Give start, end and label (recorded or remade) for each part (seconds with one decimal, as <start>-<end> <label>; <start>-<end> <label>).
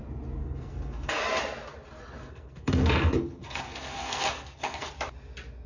0.0-0.4 recorded; 0.4-1.2 remade; 1.2-2.2 recorded; 2.2-4.9 remade; 4.9-5.7 recorded